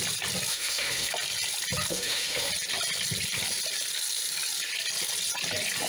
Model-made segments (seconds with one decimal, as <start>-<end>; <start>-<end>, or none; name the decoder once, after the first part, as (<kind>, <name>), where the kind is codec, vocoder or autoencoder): 0.5-1.1 (autoencoder, DAC-VAE); 1.9-2.5